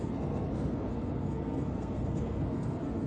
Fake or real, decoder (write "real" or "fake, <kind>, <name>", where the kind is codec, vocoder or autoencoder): fake, codec, SNAC